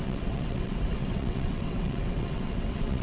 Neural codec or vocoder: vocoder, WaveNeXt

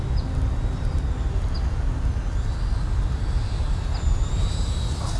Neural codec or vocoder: none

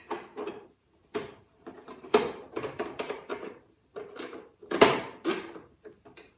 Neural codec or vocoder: vocoder, BigVGAN v2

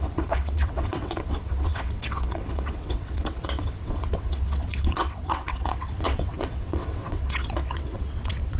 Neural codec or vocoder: vocoder, WaveNeXt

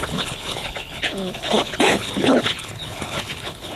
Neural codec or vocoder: codec, HILCodec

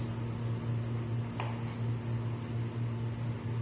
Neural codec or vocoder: none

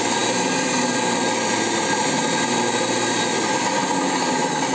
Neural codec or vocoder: none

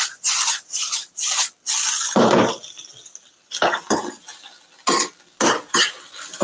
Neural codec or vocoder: none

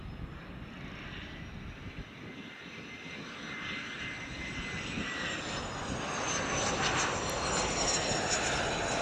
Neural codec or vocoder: none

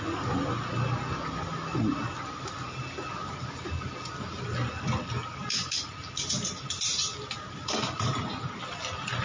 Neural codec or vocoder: none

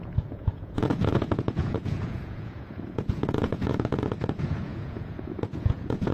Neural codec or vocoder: vocoder, Vocos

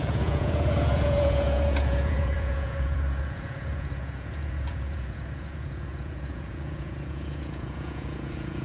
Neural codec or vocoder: vocoder, Vocos